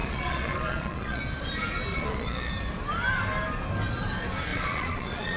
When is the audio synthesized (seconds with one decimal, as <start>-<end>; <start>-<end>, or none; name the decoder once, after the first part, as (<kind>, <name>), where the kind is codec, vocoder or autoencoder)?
0.0-1.2 (vocoder, Vocos); 1.9-2.5; 4.5-5.4

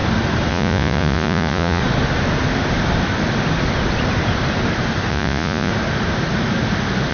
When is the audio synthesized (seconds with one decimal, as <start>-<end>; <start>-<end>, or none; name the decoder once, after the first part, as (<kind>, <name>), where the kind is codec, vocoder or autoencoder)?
0.5-1.8 (vocoder, Vocos); 5.1-5.7

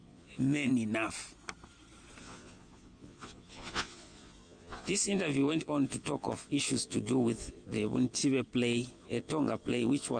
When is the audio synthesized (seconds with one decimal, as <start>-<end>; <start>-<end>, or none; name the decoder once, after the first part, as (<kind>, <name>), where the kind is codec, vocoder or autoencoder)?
0.0-0.7 (vocoder, Vocos); 2.2-8.2; 8.9-10.2

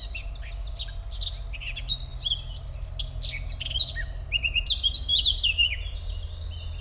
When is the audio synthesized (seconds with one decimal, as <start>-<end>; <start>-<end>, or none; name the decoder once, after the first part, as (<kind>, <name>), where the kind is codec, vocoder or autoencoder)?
none